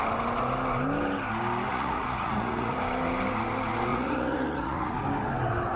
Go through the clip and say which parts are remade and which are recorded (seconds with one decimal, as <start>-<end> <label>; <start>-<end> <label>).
0.0-1.7 recorded; 1.7-2.8 remade; 2.8-3.9 recorded; 3.9-4.9 remade; 4.9-5.8 recorded